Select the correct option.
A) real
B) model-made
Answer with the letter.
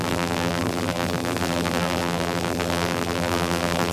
B